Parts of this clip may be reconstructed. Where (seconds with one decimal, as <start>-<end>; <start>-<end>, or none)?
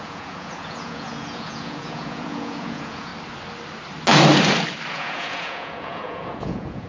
0.0-3.1; 4.9-6.9